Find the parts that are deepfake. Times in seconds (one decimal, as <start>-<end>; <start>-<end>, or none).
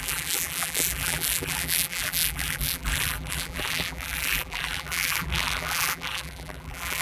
0.0-7.0